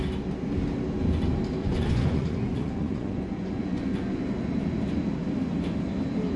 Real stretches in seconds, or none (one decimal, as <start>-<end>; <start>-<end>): 0.0-1.6; 4.2-6.4